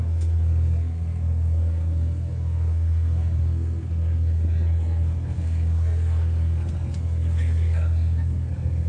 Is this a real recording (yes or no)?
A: no